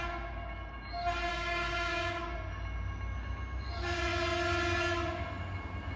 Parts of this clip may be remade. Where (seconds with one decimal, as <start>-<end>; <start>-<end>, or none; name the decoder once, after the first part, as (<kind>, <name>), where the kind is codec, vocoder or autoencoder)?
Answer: 1.3-2.2 (codec, DAC)